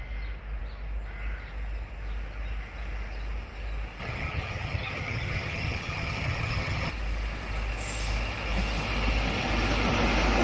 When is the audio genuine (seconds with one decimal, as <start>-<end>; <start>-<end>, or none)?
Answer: 0.0-4.0; 6.9-10.4